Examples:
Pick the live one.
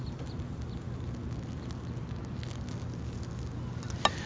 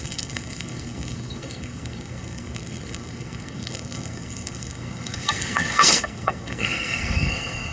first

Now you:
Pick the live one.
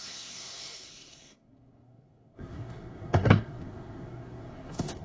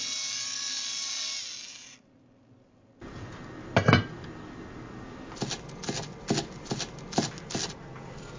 second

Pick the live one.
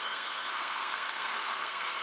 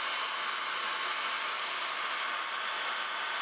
second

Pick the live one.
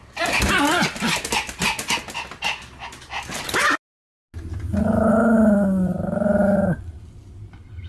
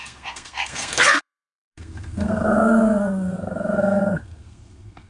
first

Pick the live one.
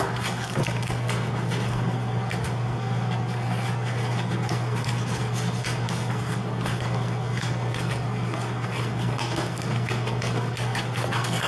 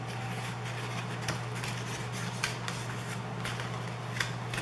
second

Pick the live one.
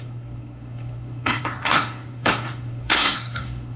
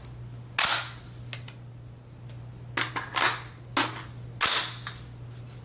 second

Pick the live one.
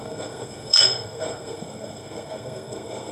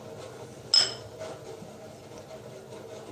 second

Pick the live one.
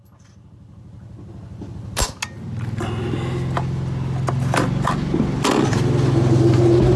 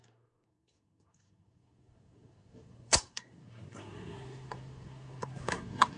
first